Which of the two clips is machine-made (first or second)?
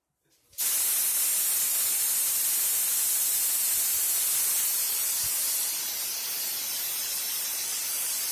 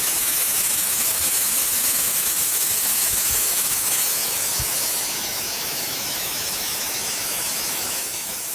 second